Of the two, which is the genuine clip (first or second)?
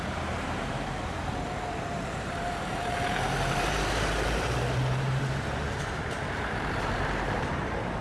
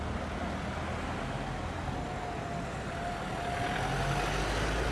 second